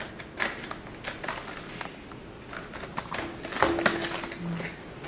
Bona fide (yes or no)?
yes